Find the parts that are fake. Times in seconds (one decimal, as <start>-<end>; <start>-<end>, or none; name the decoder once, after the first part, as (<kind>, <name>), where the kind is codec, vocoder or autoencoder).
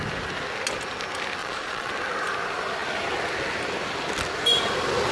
1.4-1.9 (vocoder, Vocos)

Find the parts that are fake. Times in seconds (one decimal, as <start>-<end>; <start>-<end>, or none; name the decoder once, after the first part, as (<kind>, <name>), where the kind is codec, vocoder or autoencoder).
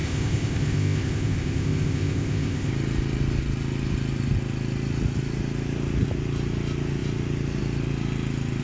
0.0-2.7 (codec, ZipCodec)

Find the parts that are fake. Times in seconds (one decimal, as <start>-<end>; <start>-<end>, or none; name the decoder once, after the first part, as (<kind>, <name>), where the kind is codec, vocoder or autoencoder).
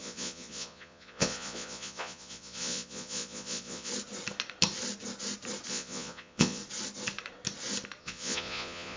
0.0-3.9 (vocoder, Vocos); 5.7-6.6; 8.0-9.0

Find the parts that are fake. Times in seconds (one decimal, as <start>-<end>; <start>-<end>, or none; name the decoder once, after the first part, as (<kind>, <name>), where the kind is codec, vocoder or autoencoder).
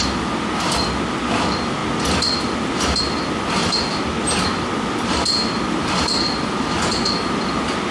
none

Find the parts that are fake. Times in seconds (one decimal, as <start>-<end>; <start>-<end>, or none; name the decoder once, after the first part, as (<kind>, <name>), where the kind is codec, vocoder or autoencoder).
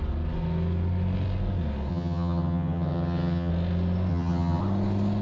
1.9-3.5 (vocoder, HiFi-GAN); 4.1-4.6